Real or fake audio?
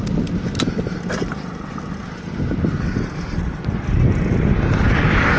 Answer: real